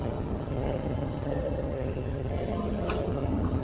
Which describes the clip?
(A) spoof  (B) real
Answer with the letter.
A